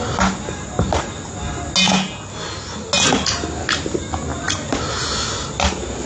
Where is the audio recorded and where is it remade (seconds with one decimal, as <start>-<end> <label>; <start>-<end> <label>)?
0.0-6.1 recorded